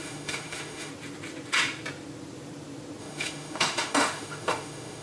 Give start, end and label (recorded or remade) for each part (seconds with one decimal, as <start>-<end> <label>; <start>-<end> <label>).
0.0-0.9 remade; 0.9-3.0 recorded; 3.0-5.0 remade